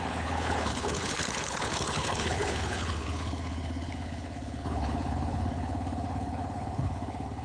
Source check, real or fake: fake